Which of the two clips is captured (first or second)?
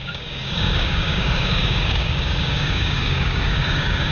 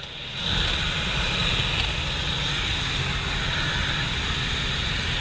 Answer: second